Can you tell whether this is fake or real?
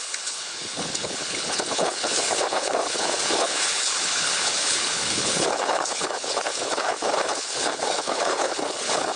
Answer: fake